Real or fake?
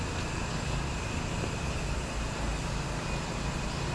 real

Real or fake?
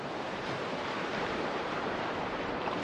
fake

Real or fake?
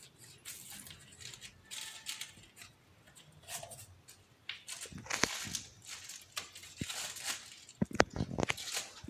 real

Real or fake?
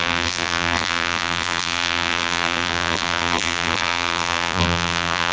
fake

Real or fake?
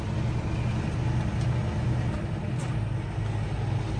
real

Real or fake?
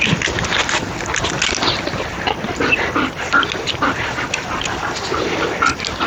real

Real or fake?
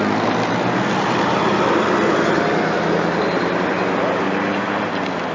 real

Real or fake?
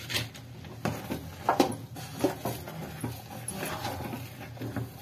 real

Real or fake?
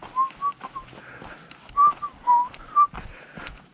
real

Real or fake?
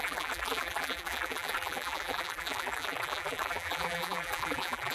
fake